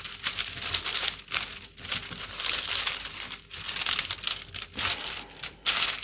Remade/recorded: recorded